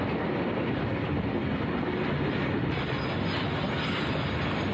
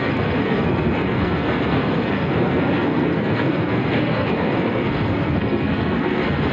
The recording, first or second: first